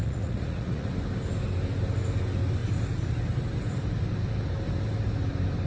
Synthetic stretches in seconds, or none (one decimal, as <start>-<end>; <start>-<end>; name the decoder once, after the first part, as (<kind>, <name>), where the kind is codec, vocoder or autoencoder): 0.0-0.9 (vocoder, Vocos)